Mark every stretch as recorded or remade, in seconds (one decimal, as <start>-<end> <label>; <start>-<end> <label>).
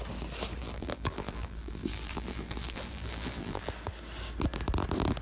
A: 0.0-0.6 recorded; 0.6-3.7 remade; 3.7-5.2 recorded